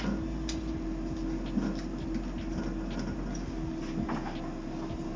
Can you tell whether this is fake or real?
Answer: real